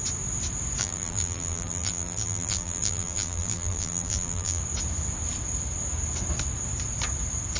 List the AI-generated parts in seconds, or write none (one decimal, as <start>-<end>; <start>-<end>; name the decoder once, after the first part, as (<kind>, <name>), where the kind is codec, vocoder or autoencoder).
0.8-4.6 (vocoder, BigVGAN v2)